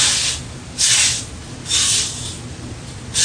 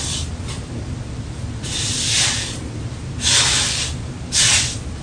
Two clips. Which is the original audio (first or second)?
first